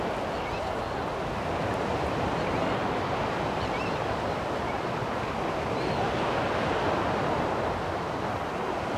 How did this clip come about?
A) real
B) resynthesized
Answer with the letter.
A